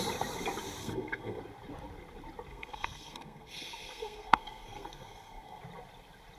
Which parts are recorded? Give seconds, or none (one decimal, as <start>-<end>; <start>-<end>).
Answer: 0.0-0.8; 1.4-2.5; 5.6-6.4